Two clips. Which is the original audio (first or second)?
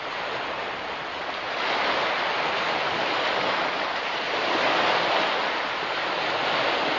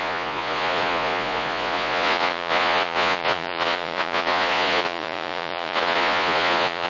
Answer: first